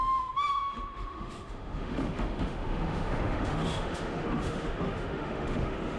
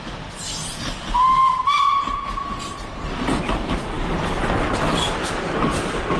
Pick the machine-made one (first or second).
first